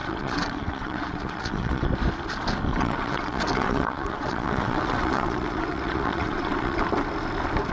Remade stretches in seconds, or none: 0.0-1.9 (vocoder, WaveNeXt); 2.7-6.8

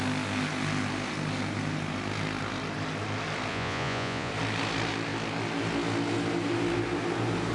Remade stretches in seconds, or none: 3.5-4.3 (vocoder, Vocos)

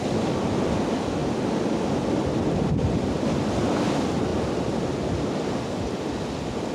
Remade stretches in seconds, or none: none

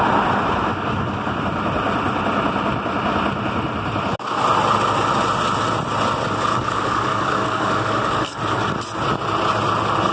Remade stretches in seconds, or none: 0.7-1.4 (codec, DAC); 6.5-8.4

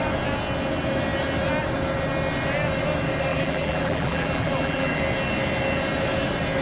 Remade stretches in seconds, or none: 3.3-5.0 (vocoder, BigVGAN v2)